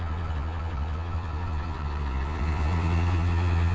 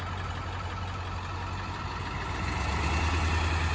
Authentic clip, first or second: second